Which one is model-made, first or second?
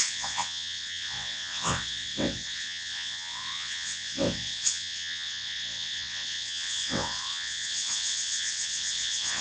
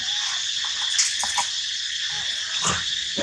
first